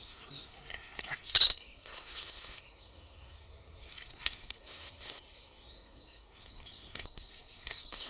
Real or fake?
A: fake